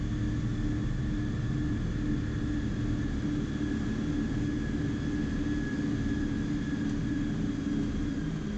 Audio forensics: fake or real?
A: real